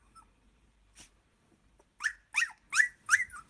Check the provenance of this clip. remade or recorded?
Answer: remade